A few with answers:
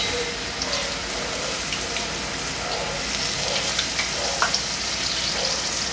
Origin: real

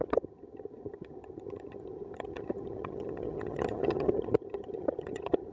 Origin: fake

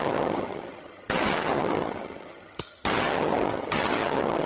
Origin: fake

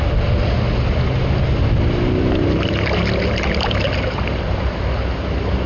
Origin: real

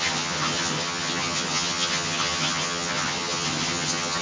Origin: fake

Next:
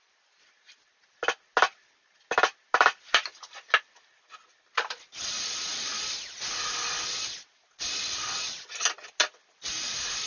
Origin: real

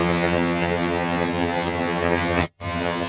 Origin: fake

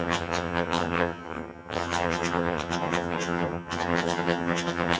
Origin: fake